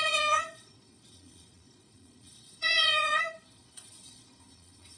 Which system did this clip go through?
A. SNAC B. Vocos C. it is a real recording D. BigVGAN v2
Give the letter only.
B